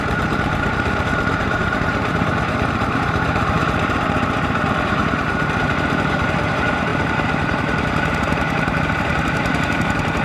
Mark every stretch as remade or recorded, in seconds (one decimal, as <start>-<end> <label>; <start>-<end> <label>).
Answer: 0.0-10.2 remade